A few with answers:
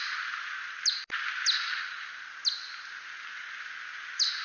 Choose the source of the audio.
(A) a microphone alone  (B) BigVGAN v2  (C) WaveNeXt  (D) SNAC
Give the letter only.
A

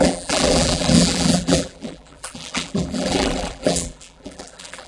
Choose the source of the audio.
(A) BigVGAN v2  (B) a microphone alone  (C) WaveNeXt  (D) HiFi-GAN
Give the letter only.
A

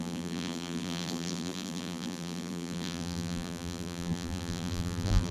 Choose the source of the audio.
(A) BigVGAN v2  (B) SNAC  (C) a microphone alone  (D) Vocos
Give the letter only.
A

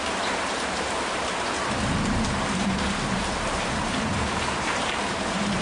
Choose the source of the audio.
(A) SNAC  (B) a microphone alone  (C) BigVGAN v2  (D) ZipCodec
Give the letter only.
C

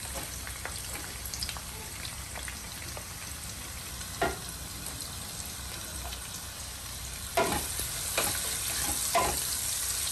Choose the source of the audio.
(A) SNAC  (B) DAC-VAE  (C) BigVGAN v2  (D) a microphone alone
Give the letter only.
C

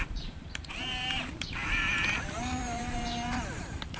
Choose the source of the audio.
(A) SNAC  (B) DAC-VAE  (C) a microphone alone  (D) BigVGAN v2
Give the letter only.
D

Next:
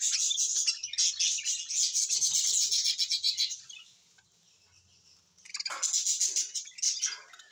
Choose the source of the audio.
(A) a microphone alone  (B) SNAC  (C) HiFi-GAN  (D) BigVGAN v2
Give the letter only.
A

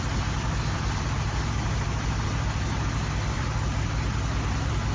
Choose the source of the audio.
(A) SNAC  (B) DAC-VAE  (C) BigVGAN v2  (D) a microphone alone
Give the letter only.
C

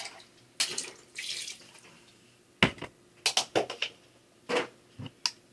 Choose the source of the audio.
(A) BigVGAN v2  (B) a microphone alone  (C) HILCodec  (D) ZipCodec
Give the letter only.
B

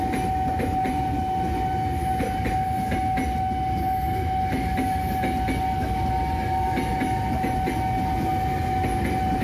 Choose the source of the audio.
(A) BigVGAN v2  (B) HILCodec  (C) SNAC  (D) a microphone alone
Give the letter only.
D